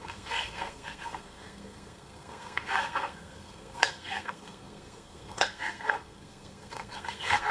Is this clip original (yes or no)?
no